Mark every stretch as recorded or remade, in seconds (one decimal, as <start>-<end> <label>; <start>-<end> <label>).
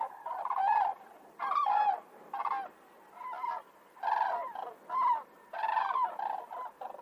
0.0-7.0 recorded